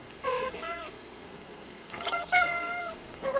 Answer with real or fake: fake